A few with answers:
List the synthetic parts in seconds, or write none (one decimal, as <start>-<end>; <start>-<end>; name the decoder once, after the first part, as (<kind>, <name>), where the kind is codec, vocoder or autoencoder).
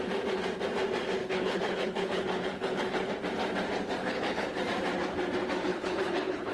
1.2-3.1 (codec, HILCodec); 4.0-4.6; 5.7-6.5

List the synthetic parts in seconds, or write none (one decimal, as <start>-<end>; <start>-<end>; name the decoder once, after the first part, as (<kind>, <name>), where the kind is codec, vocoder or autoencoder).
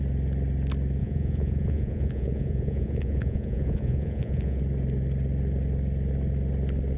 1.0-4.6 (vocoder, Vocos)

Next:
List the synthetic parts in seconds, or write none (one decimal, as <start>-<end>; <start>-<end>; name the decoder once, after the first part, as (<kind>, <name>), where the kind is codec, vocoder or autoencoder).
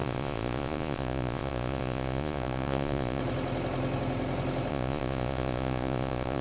0.0-3.2 (vocoder, Vocos); 4.7-6.4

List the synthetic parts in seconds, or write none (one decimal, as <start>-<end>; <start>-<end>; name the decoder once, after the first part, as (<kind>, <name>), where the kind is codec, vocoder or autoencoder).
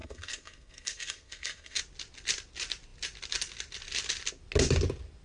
0.0-1.8 (codec, SNAC)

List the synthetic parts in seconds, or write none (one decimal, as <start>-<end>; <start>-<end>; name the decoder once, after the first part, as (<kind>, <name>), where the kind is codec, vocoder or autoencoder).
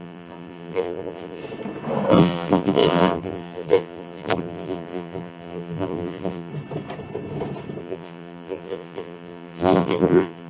0.0-1.4 (vocoder, BigVGAN v2); 2.1-6.5; 7.8-10.5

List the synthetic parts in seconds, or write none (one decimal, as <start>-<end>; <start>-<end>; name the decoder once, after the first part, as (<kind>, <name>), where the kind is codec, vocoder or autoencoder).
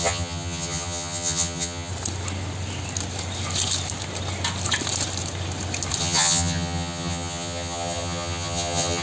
0.0-1.9 (vocoder, HiFi-GAN); 6.0-9.0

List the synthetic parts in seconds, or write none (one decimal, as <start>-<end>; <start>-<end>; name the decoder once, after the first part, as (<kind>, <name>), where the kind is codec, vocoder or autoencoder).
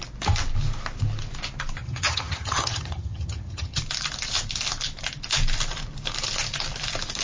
1.8-3.8 (vocoder, HiFi-GAN)